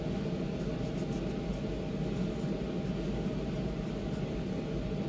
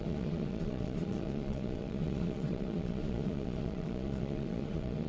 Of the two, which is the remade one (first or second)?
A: second